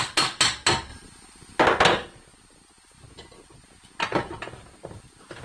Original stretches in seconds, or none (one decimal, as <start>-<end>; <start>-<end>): 0.0-5.4